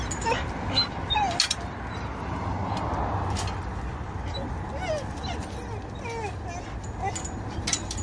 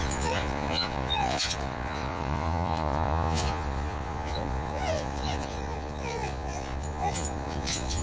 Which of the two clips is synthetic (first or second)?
second